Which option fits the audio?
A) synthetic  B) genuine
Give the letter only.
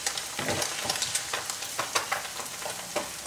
B